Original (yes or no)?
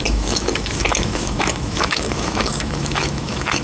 no